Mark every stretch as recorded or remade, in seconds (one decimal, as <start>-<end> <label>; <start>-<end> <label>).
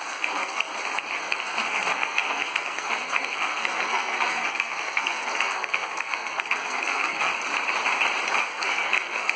0.0-0.7 remade; 0.7-1.2 recorded; 1.2-7.3 remade; 7.3-8.4 recorded; 8.4-9.4 remade